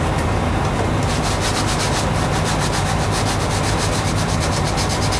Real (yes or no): yes